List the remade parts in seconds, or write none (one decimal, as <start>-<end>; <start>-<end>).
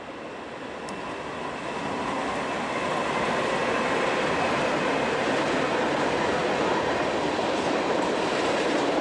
none